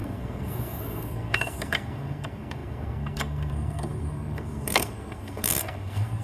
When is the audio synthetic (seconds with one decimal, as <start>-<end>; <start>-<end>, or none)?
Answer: 0.0-6.2